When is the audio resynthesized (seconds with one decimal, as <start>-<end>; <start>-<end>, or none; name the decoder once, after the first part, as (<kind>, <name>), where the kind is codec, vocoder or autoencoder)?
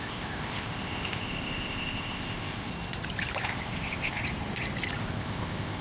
0.0-2.7 (codec, ZipCodec); 3.4-4.2; 5.0-5.8